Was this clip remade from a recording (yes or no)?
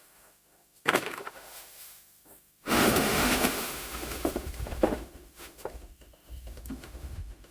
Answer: yes